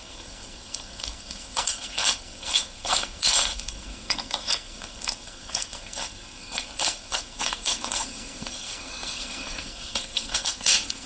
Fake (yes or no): yes